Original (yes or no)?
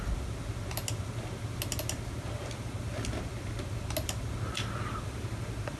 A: yes